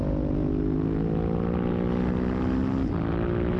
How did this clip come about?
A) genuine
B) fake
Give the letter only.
A